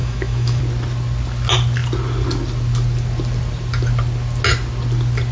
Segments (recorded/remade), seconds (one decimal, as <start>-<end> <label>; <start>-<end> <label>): 0.0-0.6 remade; 0.6-5.3 recorded